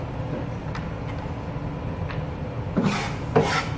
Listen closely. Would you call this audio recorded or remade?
recorded